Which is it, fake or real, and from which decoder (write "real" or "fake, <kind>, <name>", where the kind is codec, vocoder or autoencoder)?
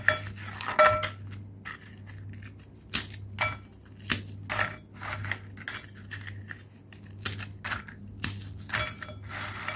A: real